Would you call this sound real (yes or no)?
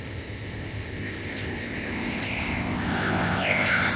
no